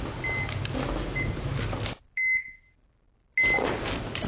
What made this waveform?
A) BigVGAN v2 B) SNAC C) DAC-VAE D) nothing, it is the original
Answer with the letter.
D